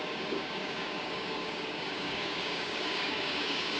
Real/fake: fake